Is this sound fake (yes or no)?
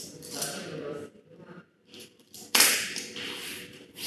yes